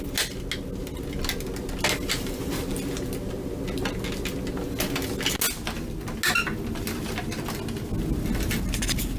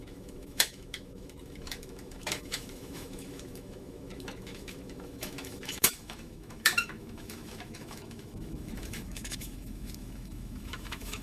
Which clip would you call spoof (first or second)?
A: second